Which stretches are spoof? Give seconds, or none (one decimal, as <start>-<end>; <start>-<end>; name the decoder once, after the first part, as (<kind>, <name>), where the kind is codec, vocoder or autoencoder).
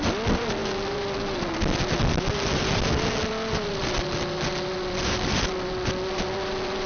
none